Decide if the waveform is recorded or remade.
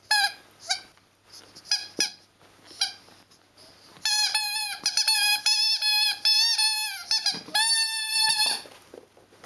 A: recorded